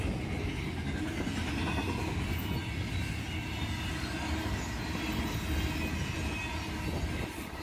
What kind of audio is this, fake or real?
real